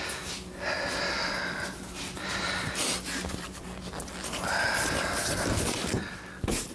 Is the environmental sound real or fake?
real